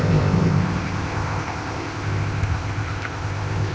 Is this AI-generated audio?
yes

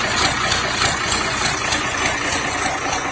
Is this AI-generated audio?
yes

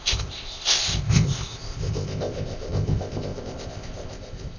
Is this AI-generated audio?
yes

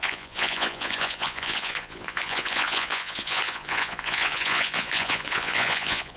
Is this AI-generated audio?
yes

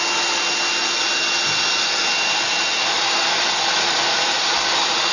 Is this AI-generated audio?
no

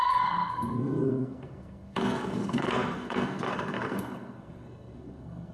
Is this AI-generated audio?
yes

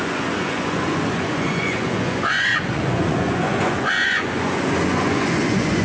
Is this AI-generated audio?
yes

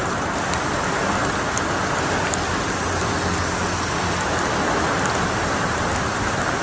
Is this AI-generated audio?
no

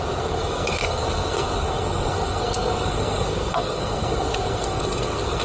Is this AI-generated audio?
yes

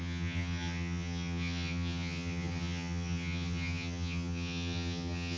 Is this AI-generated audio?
yes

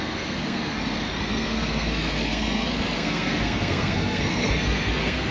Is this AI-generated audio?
yes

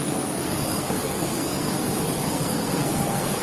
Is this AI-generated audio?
yes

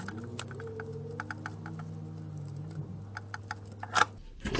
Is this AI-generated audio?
no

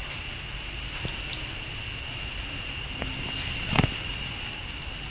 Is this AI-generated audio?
no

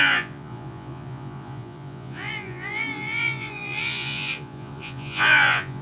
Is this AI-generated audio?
yes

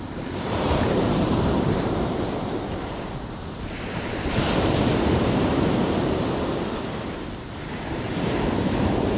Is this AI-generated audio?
yes